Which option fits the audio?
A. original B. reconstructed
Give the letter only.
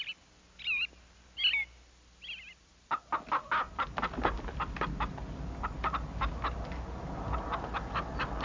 A